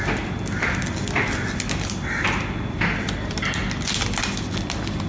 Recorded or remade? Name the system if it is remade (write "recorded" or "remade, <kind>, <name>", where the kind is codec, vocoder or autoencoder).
recorded